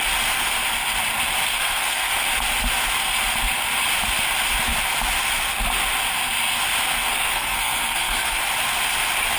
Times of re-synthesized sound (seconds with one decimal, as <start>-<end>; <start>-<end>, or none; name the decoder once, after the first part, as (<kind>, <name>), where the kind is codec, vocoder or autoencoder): 1.5-2.1 (codec, SNAC); 7.3-8.4